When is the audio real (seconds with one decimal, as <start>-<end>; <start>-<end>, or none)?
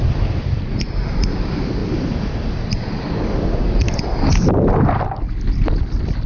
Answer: 0.0-6.3